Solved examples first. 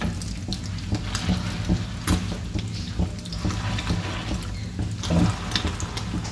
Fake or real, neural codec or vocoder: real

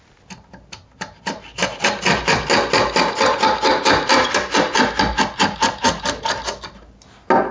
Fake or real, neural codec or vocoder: real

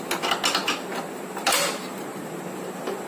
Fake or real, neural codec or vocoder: real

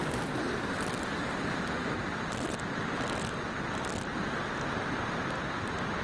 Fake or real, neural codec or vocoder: real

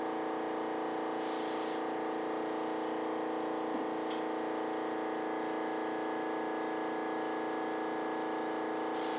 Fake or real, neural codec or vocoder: real